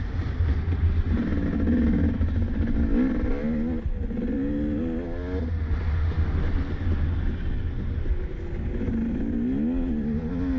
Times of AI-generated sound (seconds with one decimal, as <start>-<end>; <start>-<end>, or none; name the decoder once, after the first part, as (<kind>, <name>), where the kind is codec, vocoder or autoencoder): none